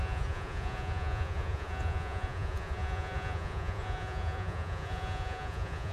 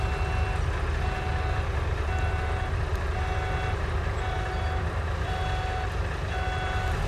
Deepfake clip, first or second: first